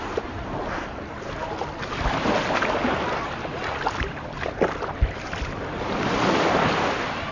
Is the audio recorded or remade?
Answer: recorded